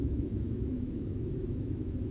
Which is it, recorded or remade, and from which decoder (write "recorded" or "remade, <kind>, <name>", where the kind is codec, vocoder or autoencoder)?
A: remade, autoencoder, DAC-VAE